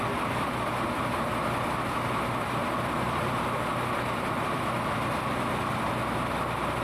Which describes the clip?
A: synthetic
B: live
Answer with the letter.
B